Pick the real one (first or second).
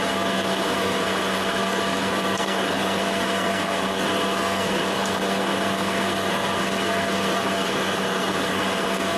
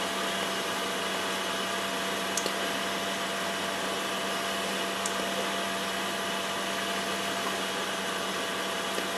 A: second